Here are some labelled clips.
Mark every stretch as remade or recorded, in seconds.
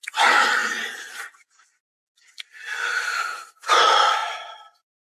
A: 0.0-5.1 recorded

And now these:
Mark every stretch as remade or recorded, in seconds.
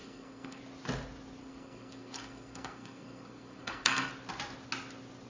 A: 0.0-0.6 remade; 0.6-1.4 recorded; 1.4-4.1 remade; 4.1-5.3 recorded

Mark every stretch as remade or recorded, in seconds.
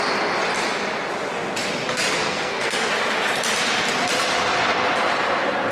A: 0.0-2.2 recorded; 2.2-2.9 remade; 2.9-5.7 recorded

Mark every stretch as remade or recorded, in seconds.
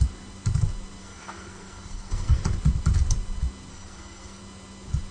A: 0.0-1.0 recorded; 1.0-2.4 remade; 2.4-3.7 recorded; 3.7-4.4 remade; 4.4-5.1 recorded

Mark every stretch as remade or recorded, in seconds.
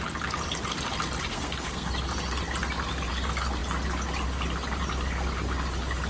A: 0.0-1.3 recorded; 1.3-1.9 remade; 1.9-6.1 recorded